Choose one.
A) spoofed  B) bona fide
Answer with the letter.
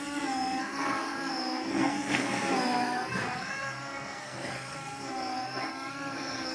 A